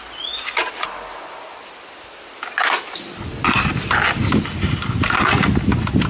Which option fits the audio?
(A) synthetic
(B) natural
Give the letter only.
B